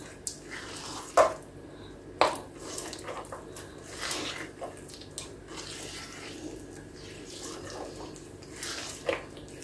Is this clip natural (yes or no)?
yes